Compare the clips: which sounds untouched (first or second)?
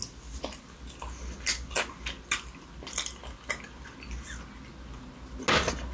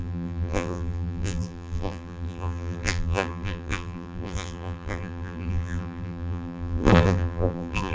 first